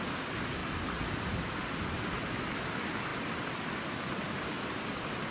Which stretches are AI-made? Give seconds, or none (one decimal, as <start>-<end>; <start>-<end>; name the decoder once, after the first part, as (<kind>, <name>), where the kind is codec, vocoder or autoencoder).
none